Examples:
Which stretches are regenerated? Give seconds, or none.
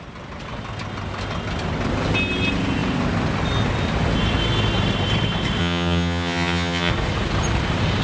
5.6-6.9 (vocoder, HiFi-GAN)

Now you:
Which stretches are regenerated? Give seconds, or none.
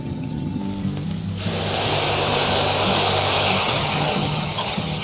0.0-0.6 (vocoder, HiFi-GAN); 3.6-5.0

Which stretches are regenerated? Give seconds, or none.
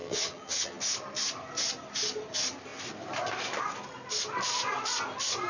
0.0-0.8 (vocoder, HiFi-GAN)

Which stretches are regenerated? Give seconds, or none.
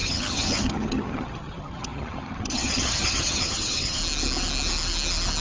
0.0-4.0 (vocoder, HiFi-GAN)